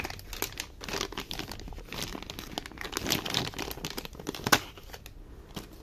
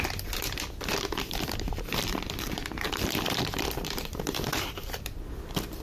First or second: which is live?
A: first